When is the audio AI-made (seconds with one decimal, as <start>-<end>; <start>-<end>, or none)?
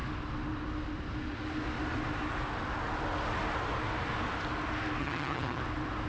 5.0-5.6